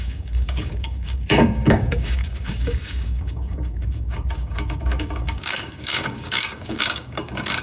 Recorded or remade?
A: remade